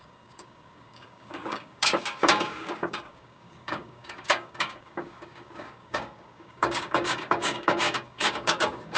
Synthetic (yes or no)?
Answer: yes